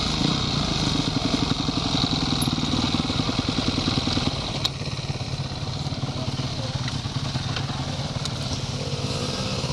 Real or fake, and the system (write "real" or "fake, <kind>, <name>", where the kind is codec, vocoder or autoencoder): real